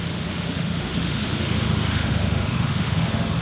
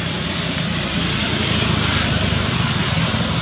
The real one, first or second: second